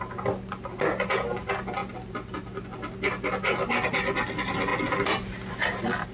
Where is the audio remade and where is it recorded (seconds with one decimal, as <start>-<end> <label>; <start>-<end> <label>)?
0.0-6.1 recorded